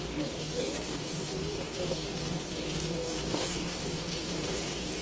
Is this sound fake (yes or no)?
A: yes